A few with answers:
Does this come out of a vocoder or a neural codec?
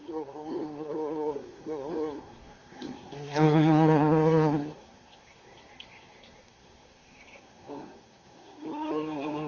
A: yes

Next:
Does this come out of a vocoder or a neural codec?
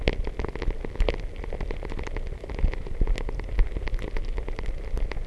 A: no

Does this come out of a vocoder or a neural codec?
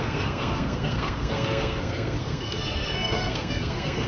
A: yes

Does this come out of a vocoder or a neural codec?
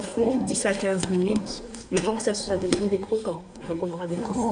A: yes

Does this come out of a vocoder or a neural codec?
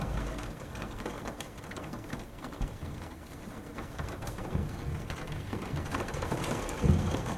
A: yes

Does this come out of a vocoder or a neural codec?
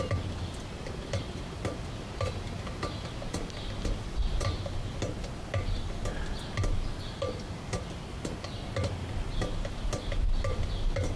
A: no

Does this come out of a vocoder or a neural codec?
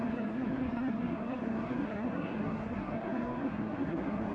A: yes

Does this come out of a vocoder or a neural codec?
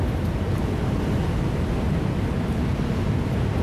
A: no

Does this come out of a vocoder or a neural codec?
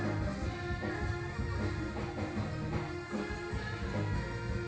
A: no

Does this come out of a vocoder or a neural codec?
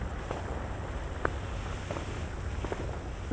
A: no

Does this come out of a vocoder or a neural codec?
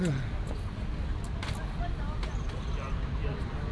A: no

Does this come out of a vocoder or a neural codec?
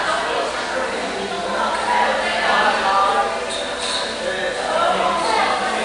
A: no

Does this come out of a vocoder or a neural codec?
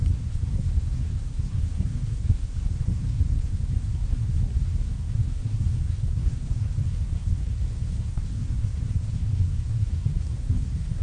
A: yes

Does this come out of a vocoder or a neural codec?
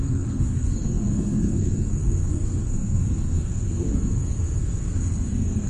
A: yes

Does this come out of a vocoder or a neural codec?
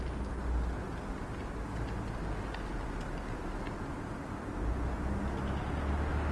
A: no